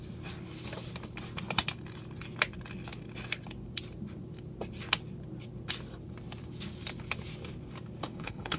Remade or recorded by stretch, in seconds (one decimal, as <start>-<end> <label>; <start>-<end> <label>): 0.0-8.0 recorded; 8.0-8.6 remade